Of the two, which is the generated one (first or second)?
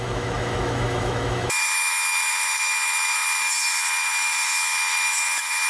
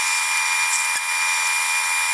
first